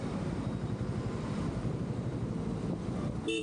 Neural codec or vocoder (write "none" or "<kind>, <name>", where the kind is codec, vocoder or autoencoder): none